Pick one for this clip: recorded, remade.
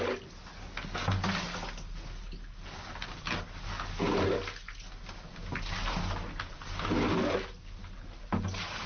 recorded